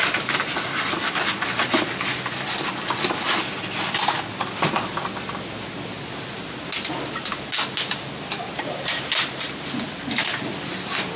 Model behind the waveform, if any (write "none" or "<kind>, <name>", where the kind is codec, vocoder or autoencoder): none